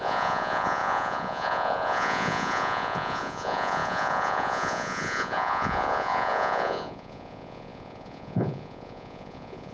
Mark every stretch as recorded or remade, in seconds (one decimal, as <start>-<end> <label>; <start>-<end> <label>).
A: 0.0-9.7 remade